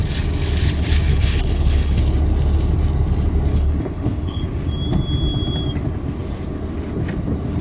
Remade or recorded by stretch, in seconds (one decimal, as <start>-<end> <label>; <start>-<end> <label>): 0.0-1.1 recorded; 1.1-2.0 remade; 2.0-3.5 recorded; 3.5-4.4 remade; 4.4-7.6 recorded